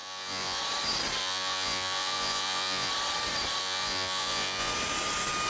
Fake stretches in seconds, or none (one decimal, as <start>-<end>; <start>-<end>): 0.0-0.6; 1.2-2.9; 3.6-4.7